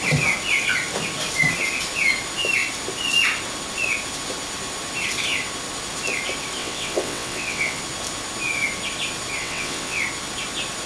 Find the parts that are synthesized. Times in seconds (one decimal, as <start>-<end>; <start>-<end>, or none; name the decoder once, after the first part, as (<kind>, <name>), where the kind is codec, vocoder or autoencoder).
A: 6.6-7.8 (vocoder, WaveNeXt); 9.4-10.0